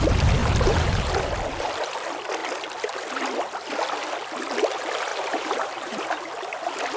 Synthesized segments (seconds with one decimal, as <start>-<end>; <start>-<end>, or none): 0.4-1.1; 5.1-6.2